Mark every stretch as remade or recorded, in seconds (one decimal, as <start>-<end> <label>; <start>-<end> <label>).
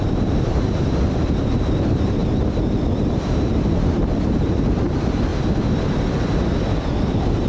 0.0-2.2 remade; 2.2-3.1 recorded; 3.1-5.3 remade; 5.3-7.1 recorded; 7.1-7.5 remade